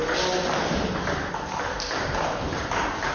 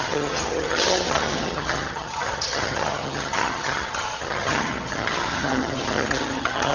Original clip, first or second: first